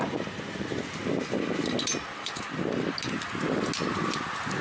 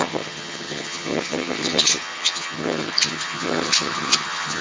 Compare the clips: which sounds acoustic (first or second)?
first